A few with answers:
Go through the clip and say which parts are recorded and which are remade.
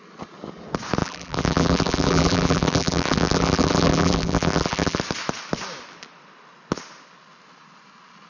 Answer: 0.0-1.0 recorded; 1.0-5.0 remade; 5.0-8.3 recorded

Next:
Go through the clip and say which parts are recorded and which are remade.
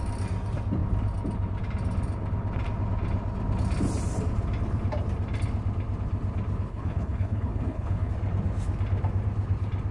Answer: 0.0-6.7 recorded; 6.7-8.1 remade; 8.1-9.9 recorded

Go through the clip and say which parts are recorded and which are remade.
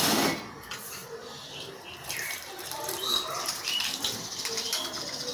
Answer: 0.0-1.0 recorded; 1.0-4.2 remade; 4.2-5.3 recorded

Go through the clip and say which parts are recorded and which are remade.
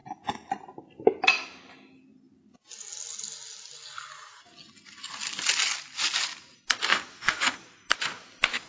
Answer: 0.0-6.9 recorded; 6.9-7.5 remade; 7.5-8.7 recorded